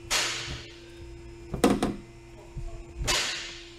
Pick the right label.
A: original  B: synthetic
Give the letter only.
A